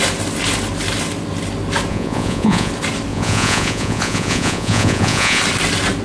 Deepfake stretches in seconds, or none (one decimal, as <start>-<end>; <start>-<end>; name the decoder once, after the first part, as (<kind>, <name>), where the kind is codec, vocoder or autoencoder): 1.9-2.7 (vocoder, Vocos); 3.1-5.4